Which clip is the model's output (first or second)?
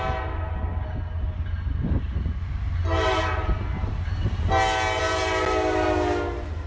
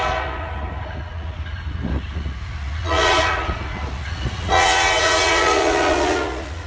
second